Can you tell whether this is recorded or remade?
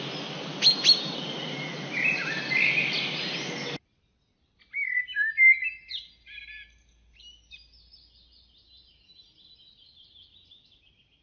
recorded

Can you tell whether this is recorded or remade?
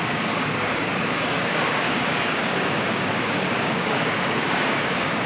remade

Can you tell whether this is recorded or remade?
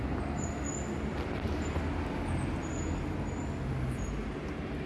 recorded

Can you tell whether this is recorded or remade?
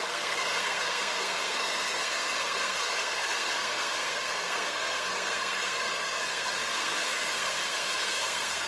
remade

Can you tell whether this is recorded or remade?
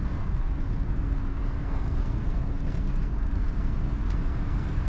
remade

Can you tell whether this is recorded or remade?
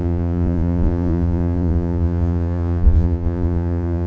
remade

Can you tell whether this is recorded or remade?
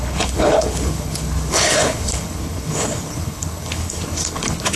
remade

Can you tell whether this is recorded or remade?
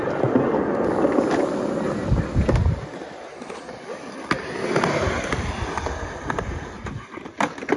recorded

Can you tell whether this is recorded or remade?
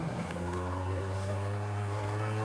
remade